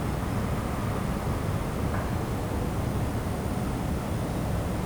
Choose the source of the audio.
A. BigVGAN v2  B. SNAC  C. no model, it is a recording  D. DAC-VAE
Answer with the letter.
C